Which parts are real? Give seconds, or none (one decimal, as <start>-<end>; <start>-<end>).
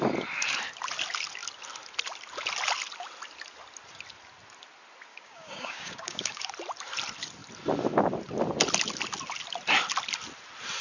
0.0-5.1; 6.5-10.8